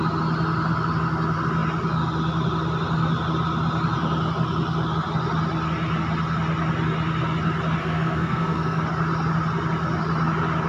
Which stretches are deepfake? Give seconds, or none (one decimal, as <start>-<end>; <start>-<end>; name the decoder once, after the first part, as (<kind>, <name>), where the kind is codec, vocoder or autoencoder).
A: 7.8-8.8 (codec, SNAC)